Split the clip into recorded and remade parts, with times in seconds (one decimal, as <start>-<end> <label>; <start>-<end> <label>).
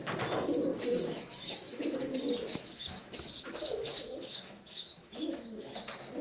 0.0-0.7 recorded; 0.7-1.8 remade; 1.8-2.5 recorded; 2.5-5.7 remade; 5.7-6.2 recorded